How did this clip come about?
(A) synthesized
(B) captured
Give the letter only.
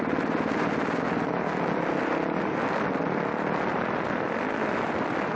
B